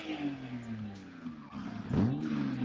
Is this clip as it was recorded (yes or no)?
yes